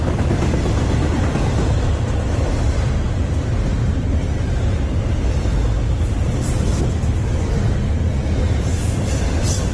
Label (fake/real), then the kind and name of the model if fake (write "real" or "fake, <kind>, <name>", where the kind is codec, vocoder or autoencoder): real